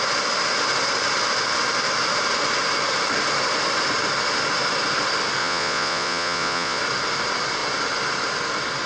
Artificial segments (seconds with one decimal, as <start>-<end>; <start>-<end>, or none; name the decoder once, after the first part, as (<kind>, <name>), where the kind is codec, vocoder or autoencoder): 5.4-6.8 (vocoder, Vocos)